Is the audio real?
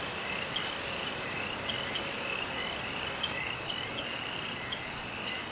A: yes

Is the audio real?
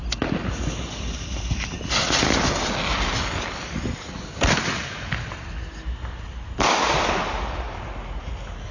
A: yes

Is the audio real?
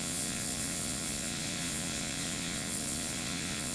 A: no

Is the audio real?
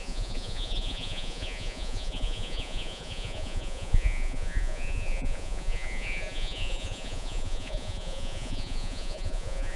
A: no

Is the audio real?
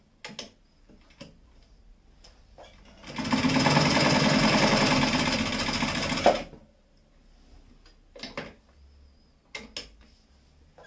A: yes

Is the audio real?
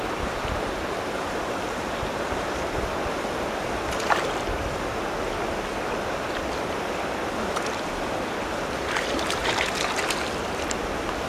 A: yes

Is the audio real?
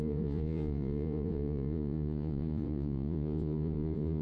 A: no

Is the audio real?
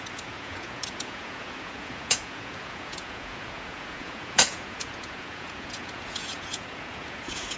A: no